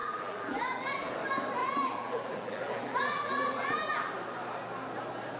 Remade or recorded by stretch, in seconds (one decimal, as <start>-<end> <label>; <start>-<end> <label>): 0.0-1.1 remade; 1.1-1.6 recorded; 1.6-4.1 remade; 4.1-5.4 recorded